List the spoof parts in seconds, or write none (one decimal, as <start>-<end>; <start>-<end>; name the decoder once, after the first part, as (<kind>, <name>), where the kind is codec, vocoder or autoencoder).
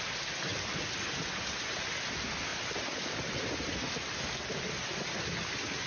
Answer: none